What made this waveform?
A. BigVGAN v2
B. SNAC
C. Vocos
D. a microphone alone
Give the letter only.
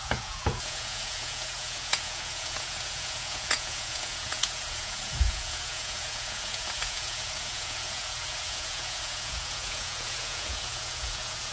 C